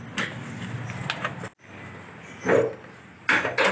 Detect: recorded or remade recorded